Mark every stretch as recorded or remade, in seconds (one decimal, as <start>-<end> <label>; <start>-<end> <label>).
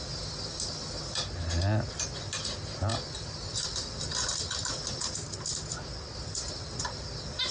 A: 0.0-7.5 recorded